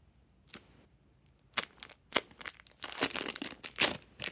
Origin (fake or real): real